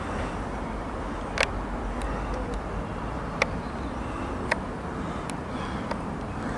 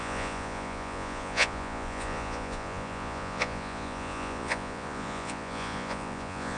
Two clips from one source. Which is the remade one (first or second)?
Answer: second